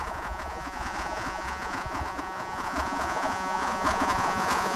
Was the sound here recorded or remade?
remade